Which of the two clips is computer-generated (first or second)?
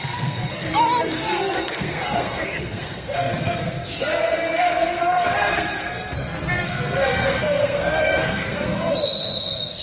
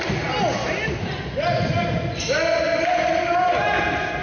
first